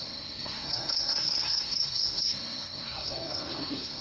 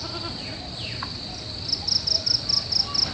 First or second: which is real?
second